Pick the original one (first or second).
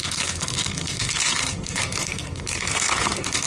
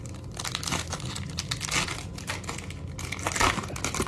second